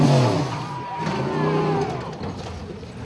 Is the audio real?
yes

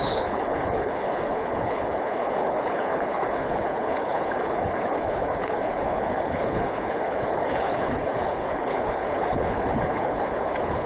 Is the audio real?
no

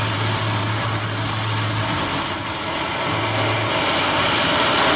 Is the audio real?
yes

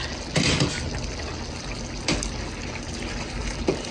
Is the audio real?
yes